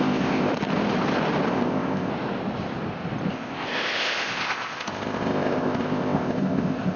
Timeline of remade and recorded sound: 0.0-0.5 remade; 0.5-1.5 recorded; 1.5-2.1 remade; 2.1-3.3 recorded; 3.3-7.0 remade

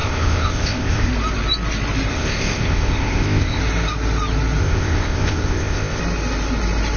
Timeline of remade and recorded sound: 0.0-1.1 remade; 1.1-2.1 recorded; 2.1-3.6 remade; 3.6-4.6 recorded; 4.6-6.0 remade; 6.0-7.0 recorded

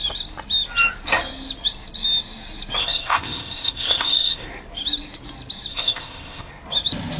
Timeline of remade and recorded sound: 0.0-2.8 recorded; 2.8-4.5 remade; 4.5-5.7 recorded; 5.7-6.5 remade; 6.5-7.2 recorded

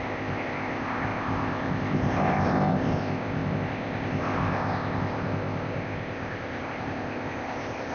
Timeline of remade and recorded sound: 0.0-7.9 remade

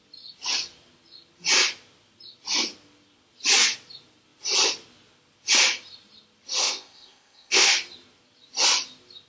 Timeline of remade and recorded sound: 0.0-6.6 recorded; 6.6-7.7 remade; 7.7-9.3 recorded